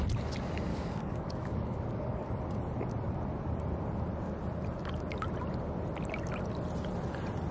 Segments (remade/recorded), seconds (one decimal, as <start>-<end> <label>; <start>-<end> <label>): 0.0-0.7 recorded; 0.7-2.3 remade; 2.3-7.5 recorded